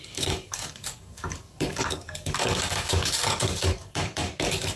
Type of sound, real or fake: fake